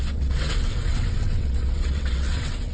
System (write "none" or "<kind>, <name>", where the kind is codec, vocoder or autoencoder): vocoder, WaveNeXt